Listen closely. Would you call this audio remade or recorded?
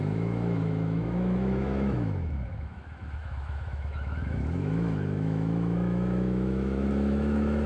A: remade